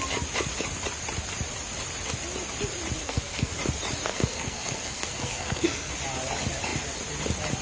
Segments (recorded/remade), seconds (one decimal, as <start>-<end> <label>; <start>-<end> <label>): 0.0-3.0 recorded; 3.0-3.5 remade; 3.5-4.1 recorded; 4.1-5.9 remade; 5.9-7.6 recorded